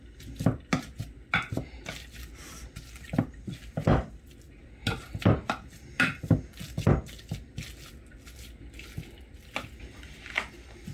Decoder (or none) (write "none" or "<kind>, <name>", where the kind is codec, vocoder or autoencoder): none